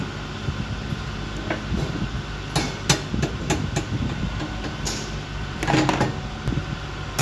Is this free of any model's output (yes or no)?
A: yes